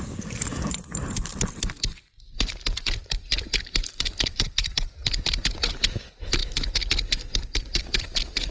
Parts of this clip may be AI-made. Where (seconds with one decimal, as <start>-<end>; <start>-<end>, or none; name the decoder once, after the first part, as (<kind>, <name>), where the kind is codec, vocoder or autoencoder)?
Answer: 0.0-1.3 (vocoder, BigVGAN v2); 2.0-5.0; 5.7-6.4; 6.9-8.5